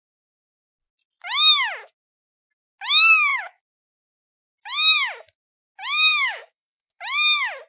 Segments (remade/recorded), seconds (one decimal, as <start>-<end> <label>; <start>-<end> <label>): 0.0-3.3 recorded; 3.3-4.1 remade; 4.1-6.1 recorded; 6.1-7.0 remade; 7.0-7.7 recorded